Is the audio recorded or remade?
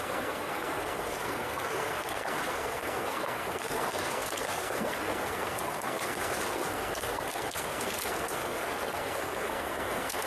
remade